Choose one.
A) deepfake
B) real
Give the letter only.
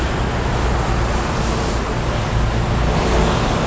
B